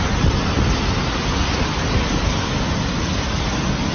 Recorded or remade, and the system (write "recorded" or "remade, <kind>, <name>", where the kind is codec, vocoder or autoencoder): recorded